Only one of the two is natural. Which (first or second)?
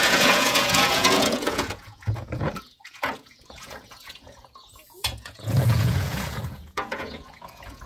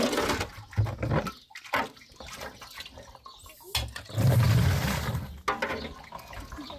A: second